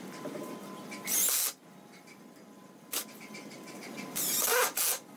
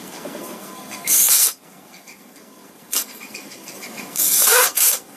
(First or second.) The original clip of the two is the first